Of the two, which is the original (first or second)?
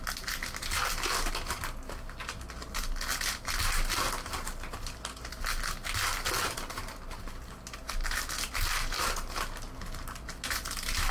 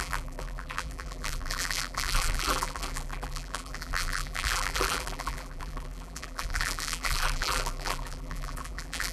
first